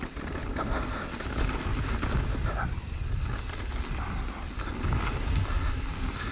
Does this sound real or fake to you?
real